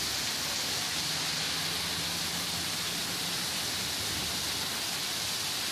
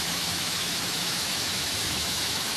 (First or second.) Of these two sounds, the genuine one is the first